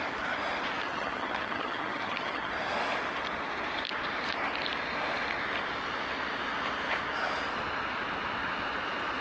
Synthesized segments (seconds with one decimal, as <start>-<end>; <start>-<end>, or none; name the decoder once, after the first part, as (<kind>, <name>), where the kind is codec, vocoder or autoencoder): 0.8-2.5 (vocoder, HiFi-GAN)